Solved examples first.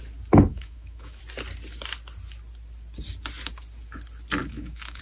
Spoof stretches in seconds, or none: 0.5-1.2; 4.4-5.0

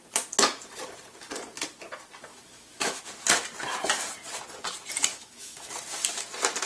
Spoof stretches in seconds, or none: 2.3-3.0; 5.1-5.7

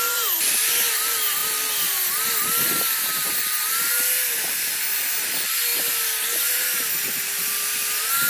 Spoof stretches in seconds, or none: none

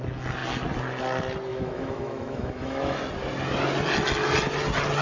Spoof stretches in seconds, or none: 1.5-3.0